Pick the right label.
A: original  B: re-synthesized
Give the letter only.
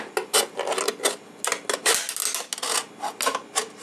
A